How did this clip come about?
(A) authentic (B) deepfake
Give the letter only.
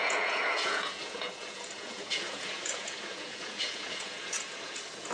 B